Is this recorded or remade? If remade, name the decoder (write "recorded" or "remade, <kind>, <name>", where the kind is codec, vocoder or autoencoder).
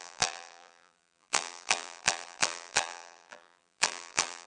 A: remade, vocoder, BigVGAN v2